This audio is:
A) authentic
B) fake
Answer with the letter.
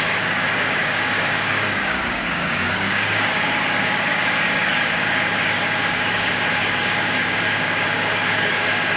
B